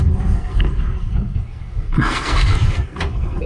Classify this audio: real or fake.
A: fake